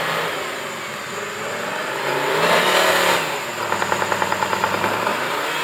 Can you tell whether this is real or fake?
real